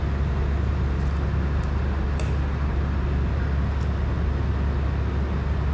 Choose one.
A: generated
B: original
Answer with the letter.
B